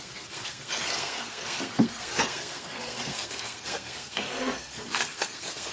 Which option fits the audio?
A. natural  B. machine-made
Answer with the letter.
B